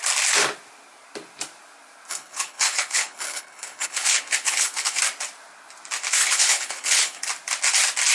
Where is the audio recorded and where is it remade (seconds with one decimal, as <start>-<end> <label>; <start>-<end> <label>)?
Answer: 0.0-2.1 recorded; 2.1-5.0 remade; 5.0-6.2 recorded; 6.2-7.2 remade; 7.2-8.1 recorded